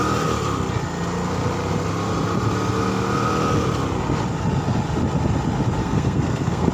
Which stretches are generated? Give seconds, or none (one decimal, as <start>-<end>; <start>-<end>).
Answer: 5.8-6.7